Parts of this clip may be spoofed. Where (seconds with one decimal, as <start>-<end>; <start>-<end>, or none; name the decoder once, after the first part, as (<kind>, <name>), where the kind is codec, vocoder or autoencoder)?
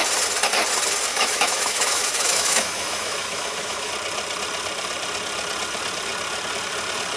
1.1-3.9 (autoencoder, DAC-VAE)